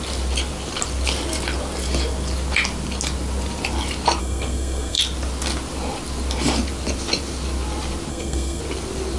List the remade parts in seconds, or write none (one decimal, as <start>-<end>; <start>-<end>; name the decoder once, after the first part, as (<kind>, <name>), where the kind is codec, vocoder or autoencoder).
4.2-5.0 (codec, SNAC); 8.1-8.6